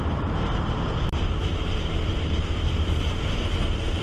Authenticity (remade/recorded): remade